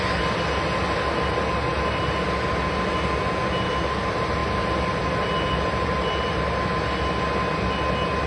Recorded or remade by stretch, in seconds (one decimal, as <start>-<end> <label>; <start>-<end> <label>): 0.0-8.3 recorded